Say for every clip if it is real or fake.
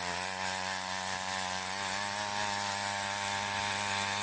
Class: real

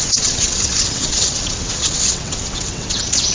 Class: fake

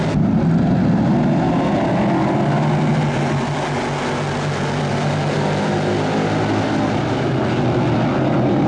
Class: real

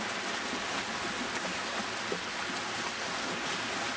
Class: real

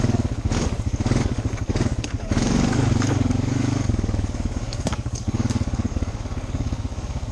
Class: fake